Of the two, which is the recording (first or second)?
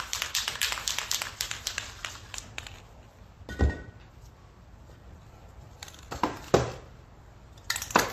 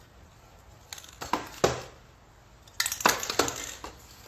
second